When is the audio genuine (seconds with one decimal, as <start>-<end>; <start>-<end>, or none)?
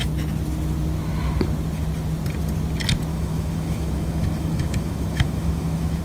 0.0-3.1